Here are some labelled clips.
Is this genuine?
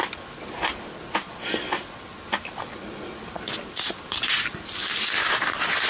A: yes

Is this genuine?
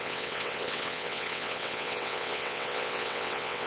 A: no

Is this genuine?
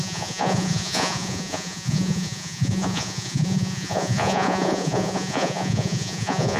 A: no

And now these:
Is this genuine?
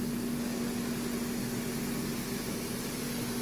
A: yes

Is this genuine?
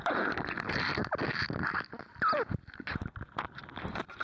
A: yes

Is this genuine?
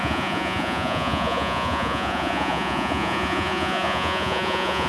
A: no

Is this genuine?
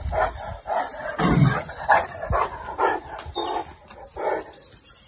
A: yes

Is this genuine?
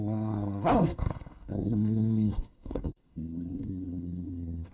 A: no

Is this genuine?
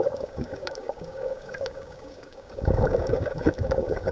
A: no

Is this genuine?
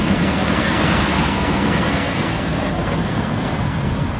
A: no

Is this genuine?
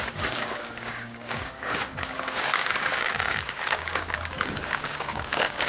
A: no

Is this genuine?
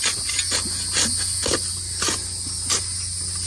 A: yes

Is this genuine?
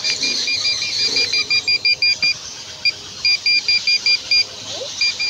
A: yes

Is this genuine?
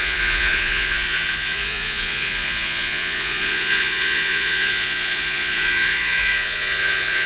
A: no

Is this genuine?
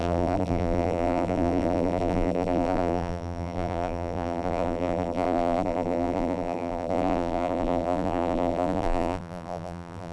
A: no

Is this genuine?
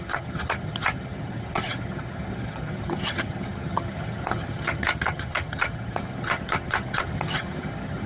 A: no